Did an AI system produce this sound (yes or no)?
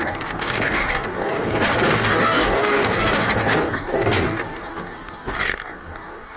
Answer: yes